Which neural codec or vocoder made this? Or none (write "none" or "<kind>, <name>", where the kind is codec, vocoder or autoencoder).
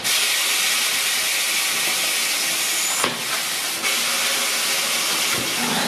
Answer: none